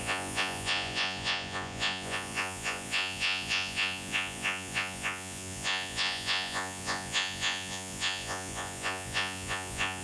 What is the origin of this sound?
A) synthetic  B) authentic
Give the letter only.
A